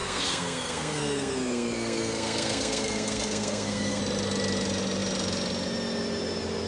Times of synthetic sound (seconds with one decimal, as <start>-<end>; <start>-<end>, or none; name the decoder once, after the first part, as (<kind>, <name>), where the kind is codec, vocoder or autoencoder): 0.0-4.0 (codec, SNAC)